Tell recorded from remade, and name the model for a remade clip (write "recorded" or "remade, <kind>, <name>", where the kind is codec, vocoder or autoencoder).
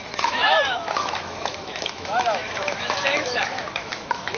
remade, autoencoder, DAC-VAE